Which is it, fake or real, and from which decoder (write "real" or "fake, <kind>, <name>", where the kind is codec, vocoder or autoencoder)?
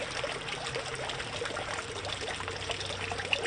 real